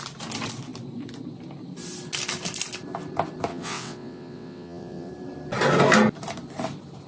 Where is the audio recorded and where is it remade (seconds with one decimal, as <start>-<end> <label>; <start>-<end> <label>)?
0.0-3.5 recorded; 3.5-5.1 remade; 5.1-7.1 recorded